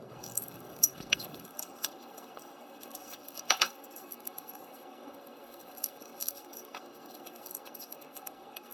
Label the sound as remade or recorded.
remade